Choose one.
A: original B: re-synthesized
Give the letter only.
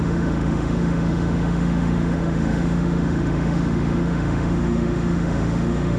B